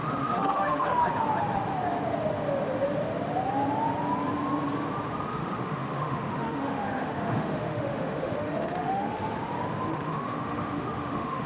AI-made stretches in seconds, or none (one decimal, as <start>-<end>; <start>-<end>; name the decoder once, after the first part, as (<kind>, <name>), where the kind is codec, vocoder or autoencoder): 0.0-1.1 (autoencoder, DAC-VAE); 5.3-9.4; 9.9-11.5